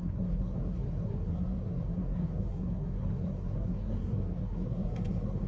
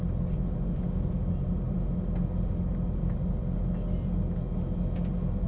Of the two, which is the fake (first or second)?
first